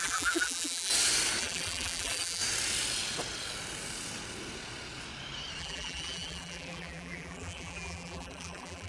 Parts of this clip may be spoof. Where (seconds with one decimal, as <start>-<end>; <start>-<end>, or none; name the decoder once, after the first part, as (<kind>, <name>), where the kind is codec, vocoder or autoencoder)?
0.0-0.9 (vocoder, BigVGAN v2); 1.4-2.4; 5.6-8.9